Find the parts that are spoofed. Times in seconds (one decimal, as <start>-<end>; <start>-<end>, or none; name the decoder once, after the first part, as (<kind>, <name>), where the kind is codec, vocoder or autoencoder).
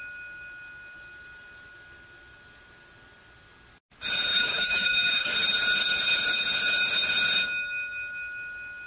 4.3-5.3 (autoencoder, DAC-VAE)